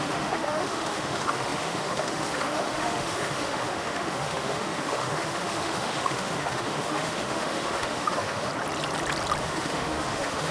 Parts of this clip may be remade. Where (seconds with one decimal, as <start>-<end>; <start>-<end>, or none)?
0.0-8.5; 9.4-10.5